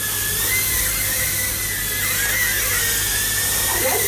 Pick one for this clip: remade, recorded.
recorded